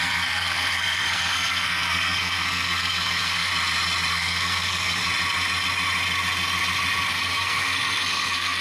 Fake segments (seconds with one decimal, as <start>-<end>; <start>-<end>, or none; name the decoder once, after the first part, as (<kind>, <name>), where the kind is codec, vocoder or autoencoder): 0.0-3.5 (codec, SNAC); 4.1-5.0; 7.1-8.6